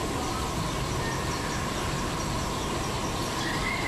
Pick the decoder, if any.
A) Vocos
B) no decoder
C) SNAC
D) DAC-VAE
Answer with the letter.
B